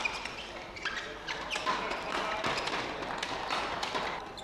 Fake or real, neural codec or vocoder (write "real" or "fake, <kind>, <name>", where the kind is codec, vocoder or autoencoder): real